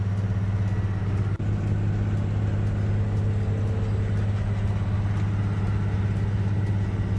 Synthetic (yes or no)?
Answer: no